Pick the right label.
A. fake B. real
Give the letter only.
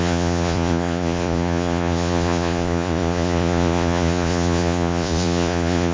A